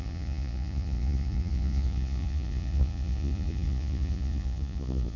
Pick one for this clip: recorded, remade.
remade